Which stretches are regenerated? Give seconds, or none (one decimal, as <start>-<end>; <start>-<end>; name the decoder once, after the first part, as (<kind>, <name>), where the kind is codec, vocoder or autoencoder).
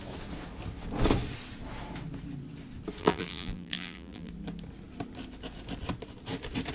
3.0-4.3 (vocoder, BigVGAN v2)